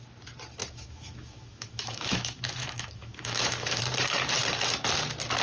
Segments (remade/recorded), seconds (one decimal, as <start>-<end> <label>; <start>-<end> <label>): 0.0-0.6 recorded; 0.6-3.8 remade; 3.8-5.4 recorded